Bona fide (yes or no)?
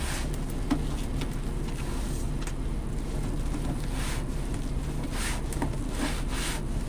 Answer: yes